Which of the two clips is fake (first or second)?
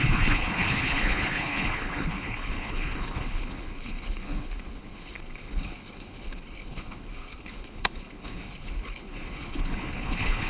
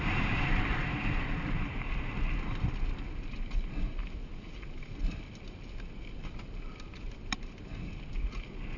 first